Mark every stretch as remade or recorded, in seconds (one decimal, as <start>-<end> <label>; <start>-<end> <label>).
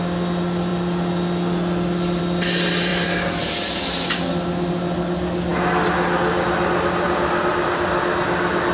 0.0-8.7 recorded